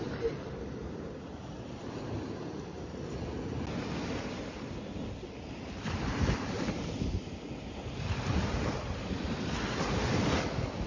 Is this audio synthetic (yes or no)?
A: no